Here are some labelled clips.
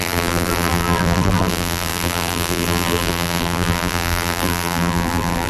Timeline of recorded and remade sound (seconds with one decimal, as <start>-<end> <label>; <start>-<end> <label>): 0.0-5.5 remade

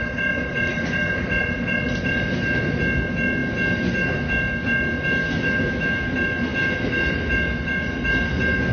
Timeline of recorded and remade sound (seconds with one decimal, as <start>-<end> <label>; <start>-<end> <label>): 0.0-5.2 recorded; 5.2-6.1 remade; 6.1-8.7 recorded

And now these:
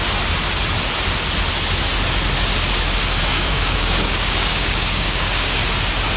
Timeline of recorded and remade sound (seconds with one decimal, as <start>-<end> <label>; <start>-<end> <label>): 0.0-3.3 recorded; 3.3-5.6 remade; 5.6-6.2 recorded

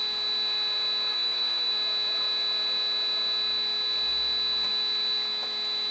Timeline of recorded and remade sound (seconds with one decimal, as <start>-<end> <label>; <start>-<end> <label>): 0.0-1.1 recorded; 1.1-1.7 remade; 1.7-5.9 recorded

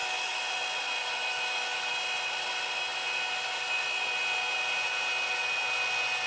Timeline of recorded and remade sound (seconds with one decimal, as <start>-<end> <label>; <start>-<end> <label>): 0.0-0.5 remade; 0.5-1.0 recorded; 1.0-1.9 remade; 1.9-6.3 recorded

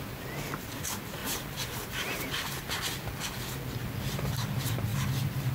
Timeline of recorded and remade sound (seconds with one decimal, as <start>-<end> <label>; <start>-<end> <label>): 0.0-1.2 recorded; 1.2-2.8 remade; 2.8-5.5 recorded